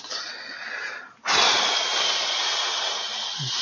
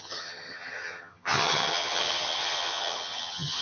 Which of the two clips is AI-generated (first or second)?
second